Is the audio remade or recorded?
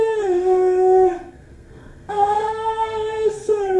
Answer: remade